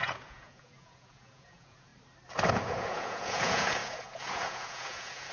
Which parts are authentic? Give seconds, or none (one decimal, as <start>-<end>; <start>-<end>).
1.9-2.5